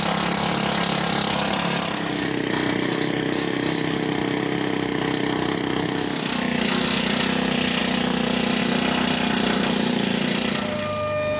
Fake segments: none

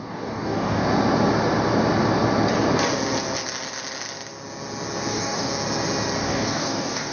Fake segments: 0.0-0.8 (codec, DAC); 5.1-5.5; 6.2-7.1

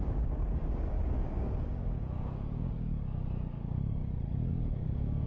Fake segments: 0.0-4.0 (codec, DAC); 4.5-5.3